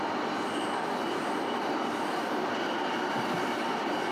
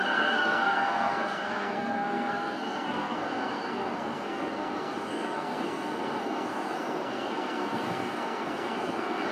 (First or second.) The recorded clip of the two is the first